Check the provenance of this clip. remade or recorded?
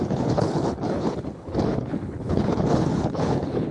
remade